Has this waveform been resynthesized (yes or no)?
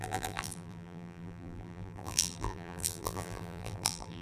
yes